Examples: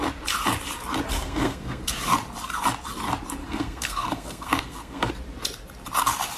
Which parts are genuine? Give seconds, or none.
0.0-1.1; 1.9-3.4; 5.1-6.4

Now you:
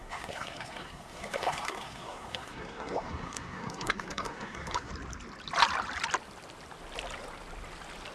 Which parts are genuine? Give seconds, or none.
4.9-8.1